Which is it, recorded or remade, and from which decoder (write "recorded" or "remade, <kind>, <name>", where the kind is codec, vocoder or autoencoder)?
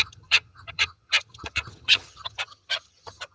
remade, vocoder, HiFi-GAN